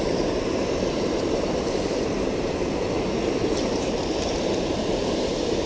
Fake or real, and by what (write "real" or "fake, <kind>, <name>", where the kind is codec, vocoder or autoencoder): fake, vocoder, BigVGAN v2